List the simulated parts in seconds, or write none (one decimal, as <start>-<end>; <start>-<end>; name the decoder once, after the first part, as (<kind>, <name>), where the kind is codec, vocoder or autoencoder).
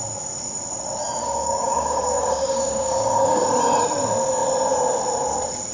1.2-3.4 (codec, DAC)